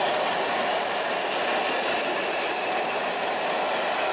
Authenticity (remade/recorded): recorded